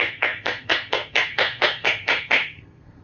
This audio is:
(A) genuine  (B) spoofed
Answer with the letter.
B